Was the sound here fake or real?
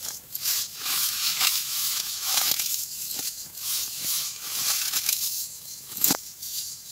fake